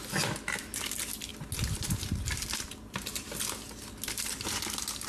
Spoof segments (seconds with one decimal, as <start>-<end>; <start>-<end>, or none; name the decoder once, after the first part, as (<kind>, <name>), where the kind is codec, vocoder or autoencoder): none